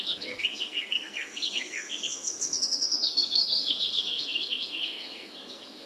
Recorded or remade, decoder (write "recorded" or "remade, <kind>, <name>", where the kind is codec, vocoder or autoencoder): remade, codec, SNAC